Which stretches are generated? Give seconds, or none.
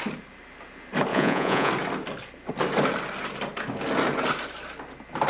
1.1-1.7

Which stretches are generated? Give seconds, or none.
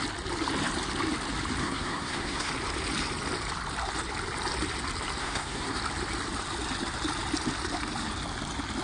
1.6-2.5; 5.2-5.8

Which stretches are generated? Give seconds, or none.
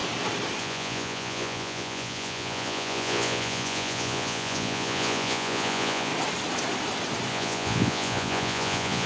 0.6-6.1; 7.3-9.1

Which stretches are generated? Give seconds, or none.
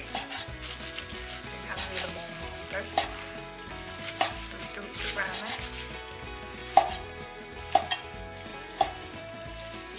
1.7-2.5; 4.9-5.5; 6.6-7.6; 8.5-9.5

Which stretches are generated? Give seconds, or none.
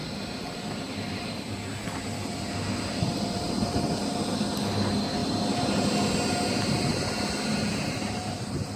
0.0-0.7; 7.5-8.8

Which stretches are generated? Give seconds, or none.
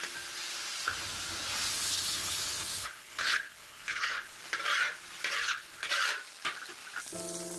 1.7-4.4; 5.4-5.9